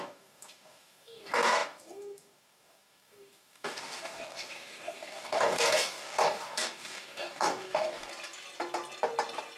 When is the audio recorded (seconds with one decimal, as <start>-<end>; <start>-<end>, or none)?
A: 8.1-9.6